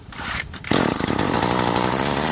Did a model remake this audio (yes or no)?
yes